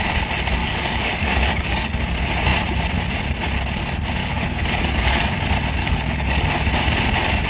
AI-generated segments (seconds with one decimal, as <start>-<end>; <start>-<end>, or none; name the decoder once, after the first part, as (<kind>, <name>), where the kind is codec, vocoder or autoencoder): 0.6-2.0 (codec, DAC); 4.2-5.3; 5.8-6.4

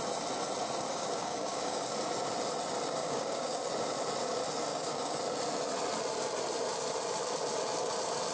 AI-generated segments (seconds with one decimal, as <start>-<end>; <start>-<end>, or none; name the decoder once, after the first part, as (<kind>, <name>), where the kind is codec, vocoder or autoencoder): 0.9-1.9 (codec, DAC); 3.0-3.7; 4.7-5.2

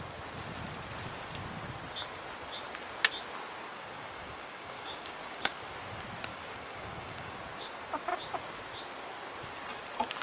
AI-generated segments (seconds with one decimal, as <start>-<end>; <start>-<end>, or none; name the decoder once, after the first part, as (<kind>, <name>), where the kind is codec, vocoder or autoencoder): 3.7-5.6 (codec, DAC); 6.3-7.4

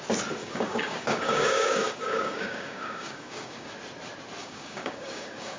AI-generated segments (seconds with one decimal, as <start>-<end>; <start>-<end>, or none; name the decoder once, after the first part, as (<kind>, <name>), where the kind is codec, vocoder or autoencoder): 0.4-3.7 (codec, DAC); 4.4-5.6

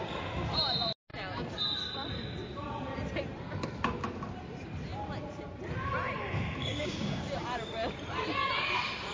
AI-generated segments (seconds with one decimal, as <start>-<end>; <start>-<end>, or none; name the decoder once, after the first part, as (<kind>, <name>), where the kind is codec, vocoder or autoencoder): 6.6-7.2 (codec, DAC)